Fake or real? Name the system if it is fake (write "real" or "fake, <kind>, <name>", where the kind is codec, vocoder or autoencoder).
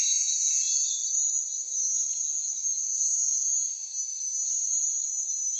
real